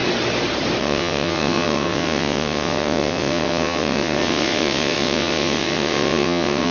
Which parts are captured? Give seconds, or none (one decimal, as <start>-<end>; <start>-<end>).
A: 0.0-0.8